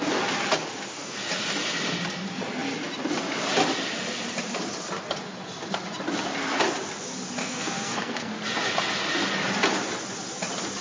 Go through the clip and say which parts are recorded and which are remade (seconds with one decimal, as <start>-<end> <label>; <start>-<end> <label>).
0.0-7.4 recorded; 7.4-8.3 remade; 8.3-10.8 recorded